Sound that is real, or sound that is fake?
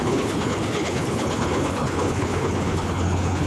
fake